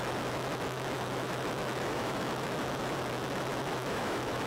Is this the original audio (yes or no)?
no